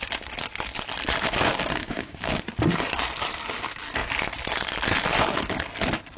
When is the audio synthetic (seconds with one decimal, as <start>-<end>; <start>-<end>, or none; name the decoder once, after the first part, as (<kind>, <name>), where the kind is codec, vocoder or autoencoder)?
1.8-2.4 (codec, DAC)